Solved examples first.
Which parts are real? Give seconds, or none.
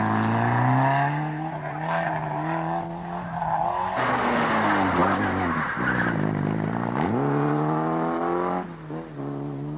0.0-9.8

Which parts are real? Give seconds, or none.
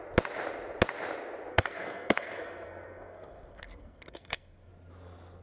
0.0-1.5; 4.7-5.4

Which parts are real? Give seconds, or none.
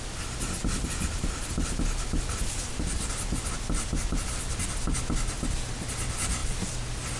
0.0-7.2